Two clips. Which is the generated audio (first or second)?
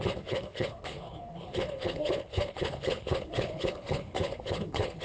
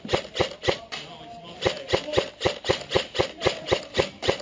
first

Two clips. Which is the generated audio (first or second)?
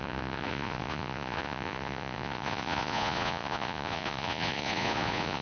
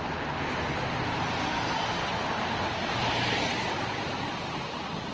first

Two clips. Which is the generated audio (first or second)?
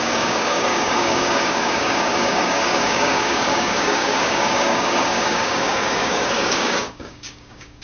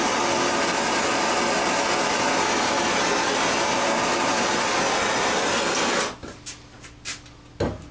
first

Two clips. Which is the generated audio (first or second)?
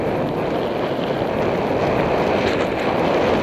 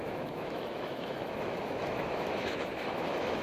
second